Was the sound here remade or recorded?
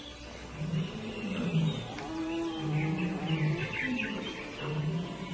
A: recorded